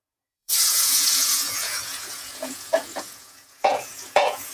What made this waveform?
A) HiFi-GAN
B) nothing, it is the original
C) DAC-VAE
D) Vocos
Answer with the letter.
D